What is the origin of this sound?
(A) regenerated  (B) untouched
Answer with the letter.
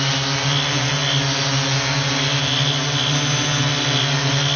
B